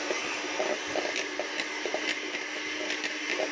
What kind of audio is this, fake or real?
real